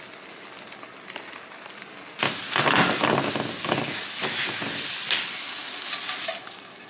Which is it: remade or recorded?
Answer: recorded